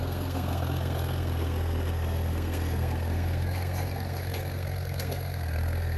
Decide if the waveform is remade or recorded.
remade